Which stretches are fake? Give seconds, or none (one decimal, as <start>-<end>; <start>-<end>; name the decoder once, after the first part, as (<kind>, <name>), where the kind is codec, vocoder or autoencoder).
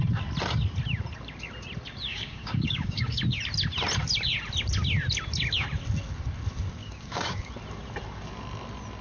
2.1-3.2 (codec, DAC); 6.8-7.5